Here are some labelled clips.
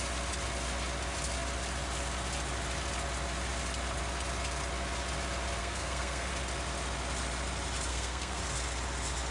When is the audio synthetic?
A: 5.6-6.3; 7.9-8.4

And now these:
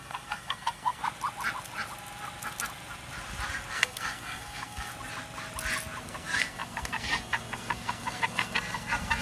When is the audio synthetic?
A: 0.0-1.0; 3.7-4.9; 6.0-9.2

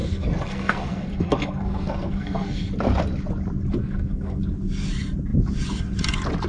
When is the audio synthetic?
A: 0.0-2.7; 3.8-4.4

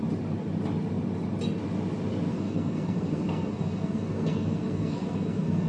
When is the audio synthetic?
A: 2.3-5.7

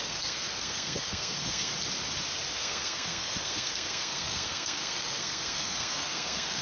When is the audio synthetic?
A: 0.0-1.7; 2.5-6.6

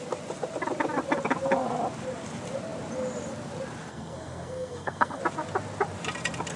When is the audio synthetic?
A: 3.9-5.2

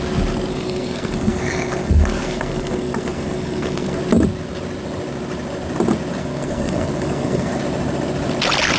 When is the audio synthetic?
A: 0.5-4.0; 6.2-7.6

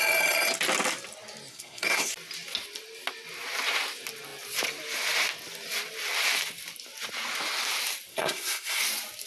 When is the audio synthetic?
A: 1.5-2.1; 8.1-8.8